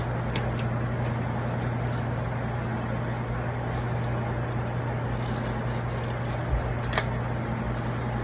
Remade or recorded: recorded